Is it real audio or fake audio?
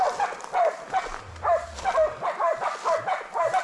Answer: real